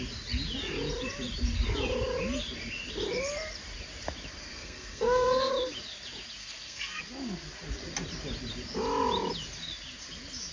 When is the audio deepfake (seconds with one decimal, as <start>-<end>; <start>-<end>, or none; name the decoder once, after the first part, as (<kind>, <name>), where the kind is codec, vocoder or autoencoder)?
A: 4.5-5.5 (codec, SNAC); 6.4-7.0

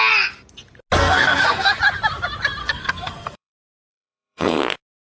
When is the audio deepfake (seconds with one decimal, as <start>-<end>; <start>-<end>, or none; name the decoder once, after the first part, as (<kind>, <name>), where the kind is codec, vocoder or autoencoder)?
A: 1.0-1.8 (codec, SNAC); 2.6-4.6

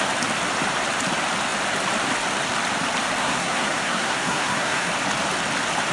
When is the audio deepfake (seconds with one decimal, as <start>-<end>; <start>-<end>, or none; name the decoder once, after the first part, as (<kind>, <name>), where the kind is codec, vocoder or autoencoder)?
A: 3.2-4.9 (codec, SNAC)